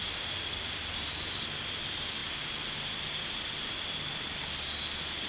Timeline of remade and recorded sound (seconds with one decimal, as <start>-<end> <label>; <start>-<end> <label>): 0.0-5.3 recorded